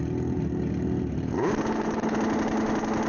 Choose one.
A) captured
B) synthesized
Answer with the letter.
A